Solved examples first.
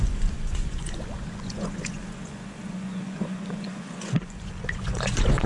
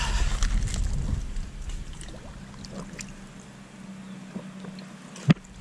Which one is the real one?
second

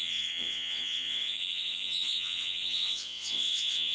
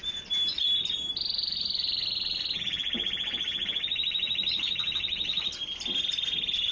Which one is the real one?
second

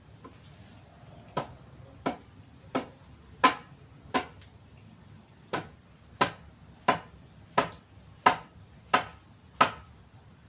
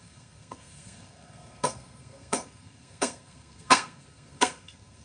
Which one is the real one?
first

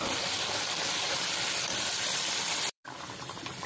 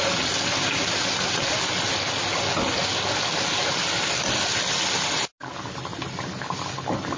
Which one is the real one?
second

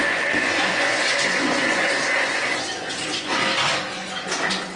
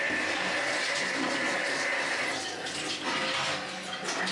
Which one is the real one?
second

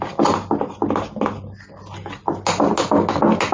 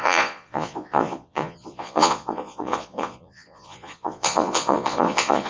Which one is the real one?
first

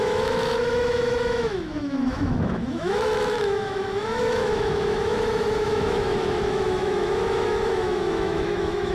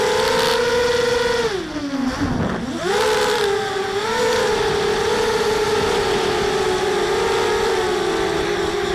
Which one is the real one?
second